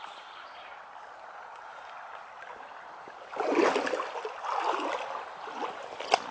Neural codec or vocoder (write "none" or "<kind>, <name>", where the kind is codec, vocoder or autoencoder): none